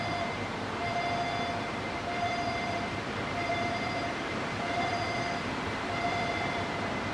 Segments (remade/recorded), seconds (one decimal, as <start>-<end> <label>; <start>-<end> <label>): 0.0-0.9 remade; 0.9-1.9 recorded; 1.9-7.1 remade